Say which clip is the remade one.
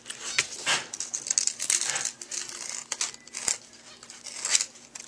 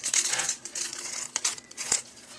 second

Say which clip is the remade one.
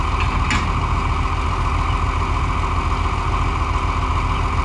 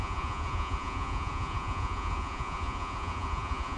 second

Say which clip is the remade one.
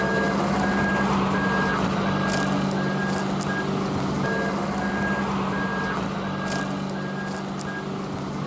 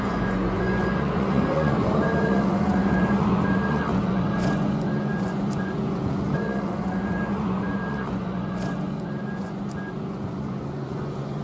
second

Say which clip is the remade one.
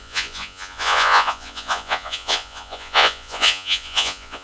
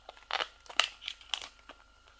first